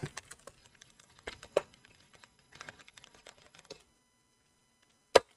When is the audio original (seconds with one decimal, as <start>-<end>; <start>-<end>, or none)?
0.0-0.6; 3.8-5.4